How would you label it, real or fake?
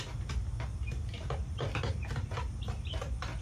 real